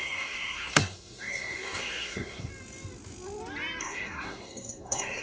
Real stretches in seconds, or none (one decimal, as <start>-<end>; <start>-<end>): 2.5-3.8